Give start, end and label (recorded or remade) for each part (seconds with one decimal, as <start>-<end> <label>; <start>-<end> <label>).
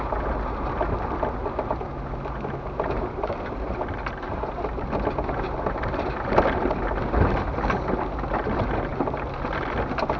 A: 0.0-10.2 recorded